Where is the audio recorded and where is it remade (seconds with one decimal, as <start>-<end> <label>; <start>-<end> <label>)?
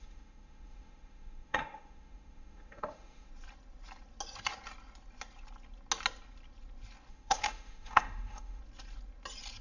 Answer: 0.0-3.3 remade; 3.3-7.1 recorded; 7.1-8.6 remade; 8.6-9.6 recorded